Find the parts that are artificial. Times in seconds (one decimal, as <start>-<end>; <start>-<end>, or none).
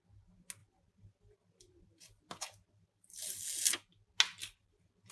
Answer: 0.6-3.4; 4.4-5.1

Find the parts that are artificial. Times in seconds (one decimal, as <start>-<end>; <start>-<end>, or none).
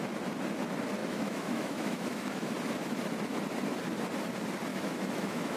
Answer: 1.0-2.5; 4.7-5.6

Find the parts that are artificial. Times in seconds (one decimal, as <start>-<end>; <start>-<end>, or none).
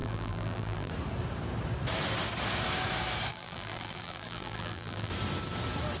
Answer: 0.0-0.9; 3.3-5.1